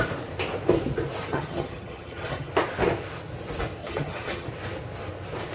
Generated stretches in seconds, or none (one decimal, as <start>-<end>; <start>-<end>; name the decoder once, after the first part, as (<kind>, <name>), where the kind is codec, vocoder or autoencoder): 1.3-2.5 (vocoder, HiFi-GAN); 3.8-4.5